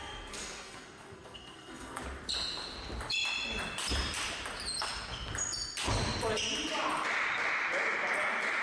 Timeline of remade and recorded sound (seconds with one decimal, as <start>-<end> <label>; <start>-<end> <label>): 0.0-2.0 remade; 2.0-8.6 recorded

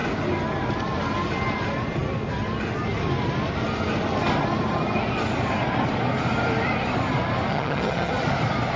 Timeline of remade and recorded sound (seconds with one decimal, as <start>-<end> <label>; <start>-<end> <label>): 0.0-7.5 recorded; 7.5-8.1 remade; 8.1-8.8 recorded

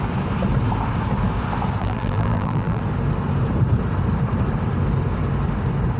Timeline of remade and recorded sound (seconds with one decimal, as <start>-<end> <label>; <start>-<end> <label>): 0.0-1.8 recorded; 1.8-2.8 remade; 2.8-6.0 recorded

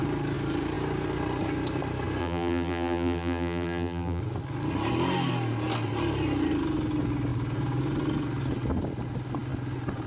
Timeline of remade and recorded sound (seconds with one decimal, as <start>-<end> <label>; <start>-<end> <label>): 0.0-2.2 recorded; 2.2-4.2 remade; 4.2-10.1 recorded

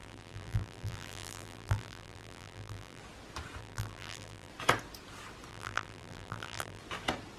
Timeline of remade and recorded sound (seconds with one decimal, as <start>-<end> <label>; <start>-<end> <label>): 0.0-3.0 remade; 3.0-3.6 recorded; 3.6-4.5 remade; 4.5-5.5 recorded; 5.5-6.8 remade; 6.8-7.4 recorded